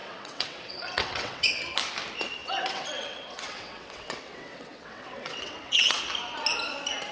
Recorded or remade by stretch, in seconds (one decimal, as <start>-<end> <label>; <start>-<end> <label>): 0.0-1.6 remade; 1.6-2.4 recorded; 2.4-6.0 remade; 6.0-7.1 recorded